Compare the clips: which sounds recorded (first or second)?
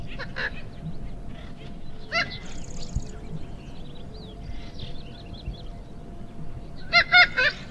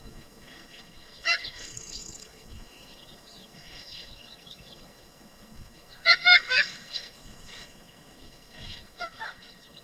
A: first